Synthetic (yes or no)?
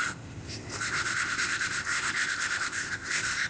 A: yes